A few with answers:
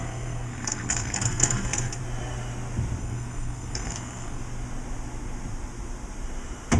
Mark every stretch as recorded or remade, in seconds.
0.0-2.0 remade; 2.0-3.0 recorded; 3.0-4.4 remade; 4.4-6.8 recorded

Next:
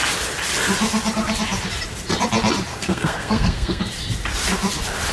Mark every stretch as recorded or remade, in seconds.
0.0-2.7 recorded; 2.7-3.8 remade; 3.8-5.1 recorded

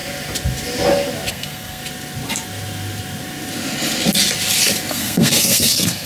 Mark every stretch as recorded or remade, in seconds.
0.0-1.3 recorded; 1.3-1.8 remade; 1.8-4.9 recorded; 4.9-6.1 remade